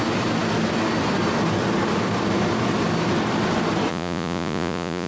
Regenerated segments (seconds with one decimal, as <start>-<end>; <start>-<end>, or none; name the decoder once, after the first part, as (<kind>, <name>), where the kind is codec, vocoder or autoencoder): 3.9-5.1 (vocoder, Vocos)